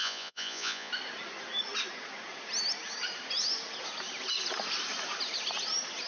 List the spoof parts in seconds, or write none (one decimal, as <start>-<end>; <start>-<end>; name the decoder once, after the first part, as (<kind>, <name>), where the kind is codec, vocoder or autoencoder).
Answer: 0.0-0.9 (vocoder, Vocos)